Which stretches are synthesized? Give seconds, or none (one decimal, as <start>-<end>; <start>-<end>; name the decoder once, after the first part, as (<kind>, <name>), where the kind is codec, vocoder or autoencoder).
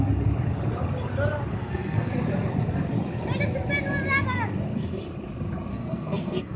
1.5-2.1 (codec, SNAC); 5.7-6.6